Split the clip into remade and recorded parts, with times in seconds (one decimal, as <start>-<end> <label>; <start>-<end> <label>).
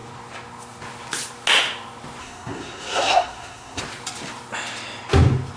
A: 0.0-2.2 recorded; 2.2-3.8 remade; 3.8-5.6 recorded